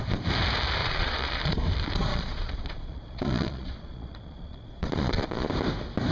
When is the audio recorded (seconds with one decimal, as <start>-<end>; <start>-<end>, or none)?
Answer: 0.0-0.8; 1.4-2.1; 5.5-6.1